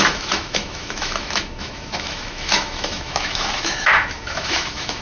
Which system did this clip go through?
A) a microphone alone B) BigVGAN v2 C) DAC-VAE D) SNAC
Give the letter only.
C